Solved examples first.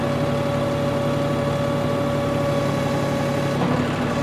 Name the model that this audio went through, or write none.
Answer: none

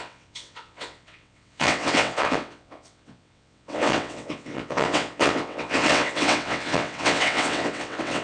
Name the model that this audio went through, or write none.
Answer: vocoder, WaveNeXt